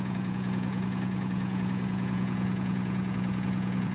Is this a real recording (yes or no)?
no